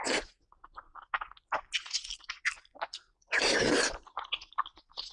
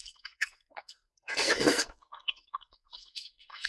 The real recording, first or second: first